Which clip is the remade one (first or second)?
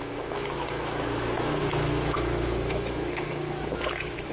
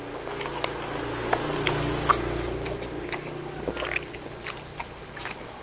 first